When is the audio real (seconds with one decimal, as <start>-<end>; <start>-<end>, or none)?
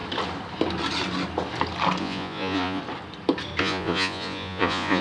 0.0-2.0; 2.8-3.6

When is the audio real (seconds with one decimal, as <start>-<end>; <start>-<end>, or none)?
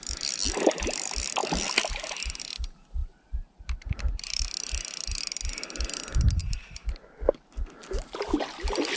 0.0-3.0; 4.5-6.4; 7.2-9.0